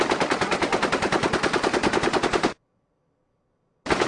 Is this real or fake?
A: real